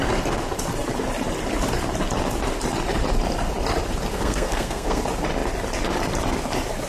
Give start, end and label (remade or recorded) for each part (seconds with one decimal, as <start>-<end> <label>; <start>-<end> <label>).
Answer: 0.0-4.1 recorded; 4.1-5.0 remade; 5.0-6.9 recorded